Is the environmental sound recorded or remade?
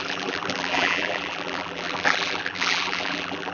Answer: remade